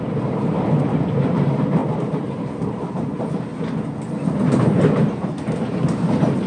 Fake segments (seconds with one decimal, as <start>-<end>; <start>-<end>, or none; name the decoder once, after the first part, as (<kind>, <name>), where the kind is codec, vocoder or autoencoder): 0.0-3.5 (vocoder, BigVGAN v2); 4.9-6.5